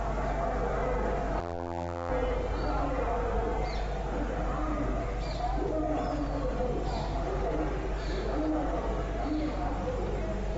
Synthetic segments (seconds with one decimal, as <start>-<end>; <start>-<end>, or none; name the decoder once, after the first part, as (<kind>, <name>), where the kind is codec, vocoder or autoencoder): 1.4-2.1 (vocoder, BigVGAN v2)